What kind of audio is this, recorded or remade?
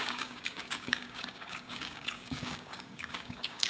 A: remade